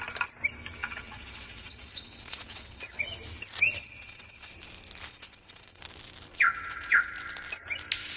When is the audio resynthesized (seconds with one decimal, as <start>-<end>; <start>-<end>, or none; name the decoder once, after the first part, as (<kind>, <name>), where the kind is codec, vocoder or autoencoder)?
0.8-3.0 (vocoder, WaveNeXt); 3.8-4.5; 5.1-5.8; 6.3-7.1